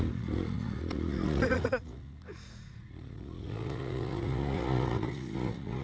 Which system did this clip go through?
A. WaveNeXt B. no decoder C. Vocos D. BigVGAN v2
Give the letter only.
C